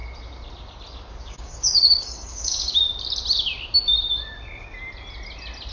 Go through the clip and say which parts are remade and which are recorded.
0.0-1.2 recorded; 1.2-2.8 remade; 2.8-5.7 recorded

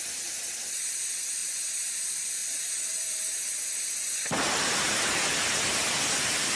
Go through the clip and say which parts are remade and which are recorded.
0.0-6.6 recorded